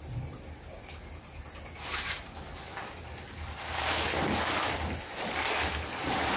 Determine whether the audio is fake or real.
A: real